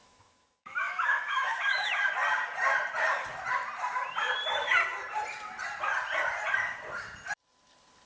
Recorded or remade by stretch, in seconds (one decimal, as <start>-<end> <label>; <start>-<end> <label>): 0.0-2.1 remade; 2.1-8.1 recorded